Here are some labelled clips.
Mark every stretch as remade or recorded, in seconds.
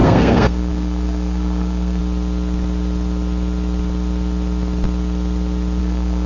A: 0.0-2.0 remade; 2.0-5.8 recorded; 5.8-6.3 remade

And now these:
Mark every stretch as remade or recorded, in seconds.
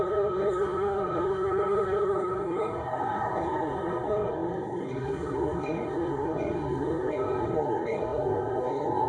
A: 0.0-9.1 remade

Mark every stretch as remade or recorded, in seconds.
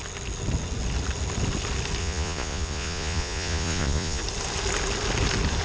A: 0.0-2.0 recorded; 2.0-4.2 remade; 4.2-5.6 recorded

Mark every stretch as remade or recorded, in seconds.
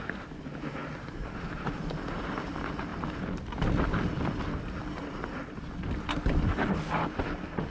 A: 0.0-7.7 recorded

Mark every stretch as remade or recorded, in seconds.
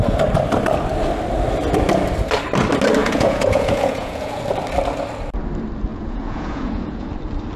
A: 0.0-3.0 recorded; 3.0-4.4 remade; 4.4-5.9 recorded; 5.9-7.1 remade; 7.1-7.6 recorded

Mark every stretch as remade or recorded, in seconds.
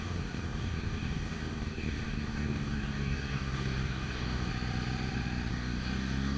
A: 0.0-4.5 remade; 4.5-5.5 recorded; 5.5-6.4 remade